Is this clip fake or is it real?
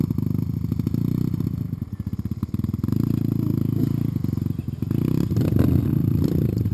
real